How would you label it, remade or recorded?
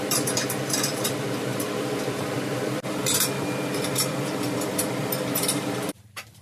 remade